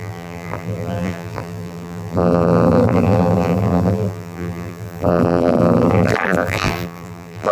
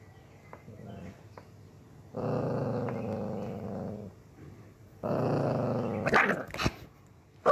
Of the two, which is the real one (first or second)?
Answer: second